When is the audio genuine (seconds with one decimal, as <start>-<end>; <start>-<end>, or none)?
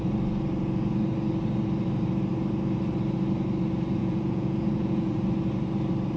0.0-4.0; 5.2-6.2